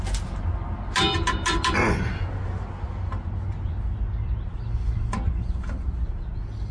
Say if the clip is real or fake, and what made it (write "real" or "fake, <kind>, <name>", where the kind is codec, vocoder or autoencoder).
real